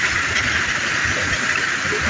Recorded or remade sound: recorded